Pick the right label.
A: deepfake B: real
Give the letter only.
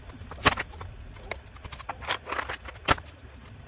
A